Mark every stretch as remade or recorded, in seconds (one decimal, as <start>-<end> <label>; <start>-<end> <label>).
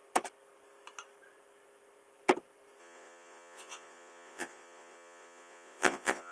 0.0-2.8 recorded; 2.8-6.3 remade